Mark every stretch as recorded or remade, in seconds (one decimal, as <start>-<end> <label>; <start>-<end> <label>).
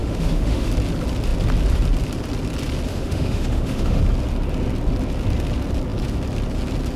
0.0-0.7 remade; 0.7-2.9 recorded; 2.9-4.0 remade; 4.0-7.0 recorded